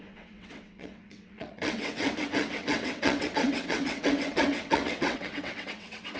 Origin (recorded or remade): remade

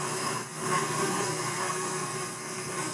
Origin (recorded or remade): remade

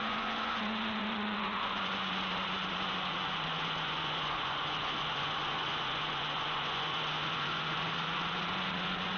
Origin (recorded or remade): remade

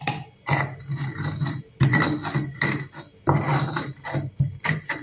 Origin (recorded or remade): recorded